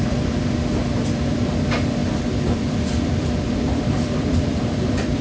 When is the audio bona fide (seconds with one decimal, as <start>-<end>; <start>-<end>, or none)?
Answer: none